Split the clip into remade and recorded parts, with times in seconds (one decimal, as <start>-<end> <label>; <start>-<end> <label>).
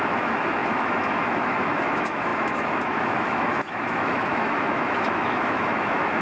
0.0-6.2 remade